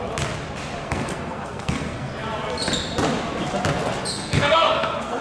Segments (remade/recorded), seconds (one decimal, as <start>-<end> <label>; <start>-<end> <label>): 0.0-0.8 recorded; 0.8-2.1 remade; 2.1-4.1 recorded; 4.1-5.2 remade